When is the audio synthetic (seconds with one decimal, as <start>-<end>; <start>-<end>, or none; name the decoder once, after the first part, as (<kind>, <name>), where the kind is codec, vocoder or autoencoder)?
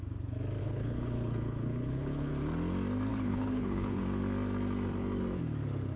0.6-2.3 (codec, HILCodec); 3.1-4.0